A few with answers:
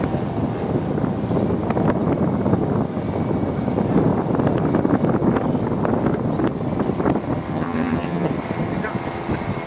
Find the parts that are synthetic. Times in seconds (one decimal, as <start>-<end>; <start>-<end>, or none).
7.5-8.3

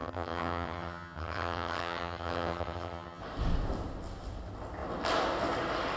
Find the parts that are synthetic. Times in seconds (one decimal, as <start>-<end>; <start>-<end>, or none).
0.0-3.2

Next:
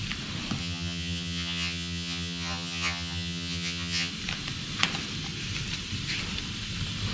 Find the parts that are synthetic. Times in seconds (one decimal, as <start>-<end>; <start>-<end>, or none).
0.6-4.1

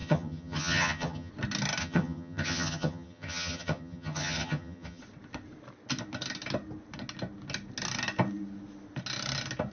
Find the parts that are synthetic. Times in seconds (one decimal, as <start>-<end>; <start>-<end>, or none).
0.0-1.3; 1.8-5.0

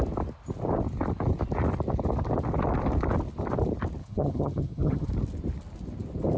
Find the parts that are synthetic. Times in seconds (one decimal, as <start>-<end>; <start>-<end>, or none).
4.0-5.1